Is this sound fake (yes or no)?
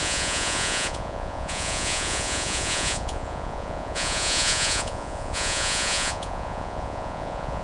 yes